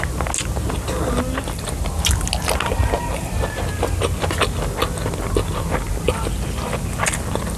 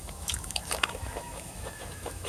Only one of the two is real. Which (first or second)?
first